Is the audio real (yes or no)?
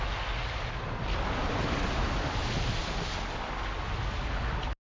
yes